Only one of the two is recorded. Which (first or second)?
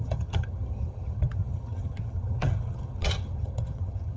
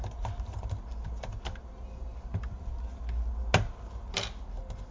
second